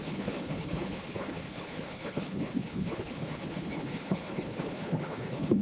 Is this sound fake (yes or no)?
yes